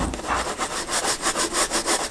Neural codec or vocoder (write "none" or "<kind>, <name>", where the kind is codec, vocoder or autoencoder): none